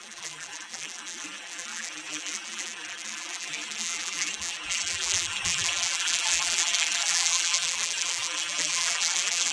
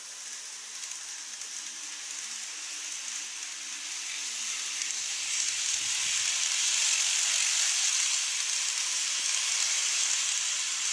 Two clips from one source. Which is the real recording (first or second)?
second